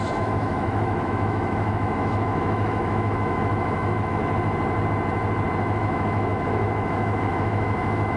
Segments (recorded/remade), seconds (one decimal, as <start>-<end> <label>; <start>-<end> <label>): 0.0-4.2 remade; 4.2-5.6 recorded; 5.6-8.2 remade